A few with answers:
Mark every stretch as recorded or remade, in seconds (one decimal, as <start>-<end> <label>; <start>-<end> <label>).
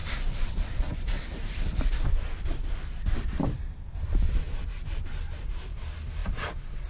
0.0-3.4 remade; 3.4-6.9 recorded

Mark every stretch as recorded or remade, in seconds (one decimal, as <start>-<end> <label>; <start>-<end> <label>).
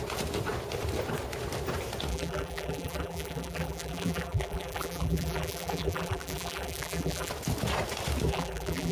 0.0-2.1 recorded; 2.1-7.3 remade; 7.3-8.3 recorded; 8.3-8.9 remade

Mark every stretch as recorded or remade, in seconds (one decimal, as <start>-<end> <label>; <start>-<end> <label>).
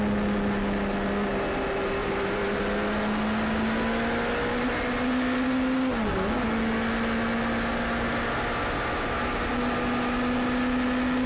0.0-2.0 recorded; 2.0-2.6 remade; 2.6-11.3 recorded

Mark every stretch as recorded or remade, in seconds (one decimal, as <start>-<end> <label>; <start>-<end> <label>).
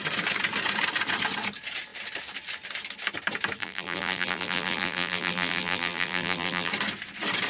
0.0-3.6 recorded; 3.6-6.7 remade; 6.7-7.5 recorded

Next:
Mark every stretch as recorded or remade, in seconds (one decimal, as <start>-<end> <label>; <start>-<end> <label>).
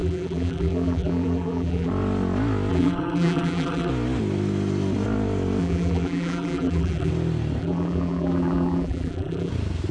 0.0-1.9 remade; 1.9-2.7 recorded; 2.7-3.9 remade; 3.9-5.6 recorded; 5.6-7.1 remade; 7.1-7.6 recorded; 7.6-9.5 remade; 9.5-9.9 recorded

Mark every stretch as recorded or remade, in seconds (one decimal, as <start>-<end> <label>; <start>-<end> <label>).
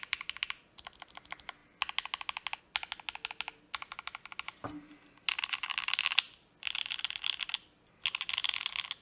0.0-5.7 recorded; 5.7-6.5 remade; 6.5-9.0 recorded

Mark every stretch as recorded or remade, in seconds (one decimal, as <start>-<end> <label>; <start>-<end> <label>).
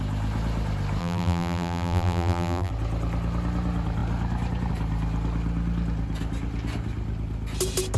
0.0-1.0 recorded; 1.0-2.7 remade; 2.7-8.0 recorded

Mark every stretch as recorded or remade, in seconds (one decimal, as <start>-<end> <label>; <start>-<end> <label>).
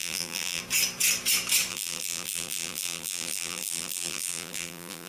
0.0-0.6 remade; 0.6-1.7 recorded; 1.7-5.1 remade